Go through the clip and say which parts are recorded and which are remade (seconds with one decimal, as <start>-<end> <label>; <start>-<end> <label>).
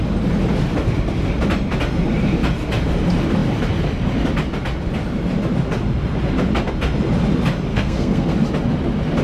0.0-7.7 recorded; 7.7-8.4 remade; 8.4-9.2 recorded